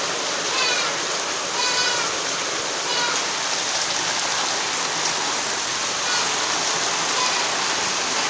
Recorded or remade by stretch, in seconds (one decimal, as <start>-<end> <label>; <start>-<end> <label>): 0.0-8.3 recorded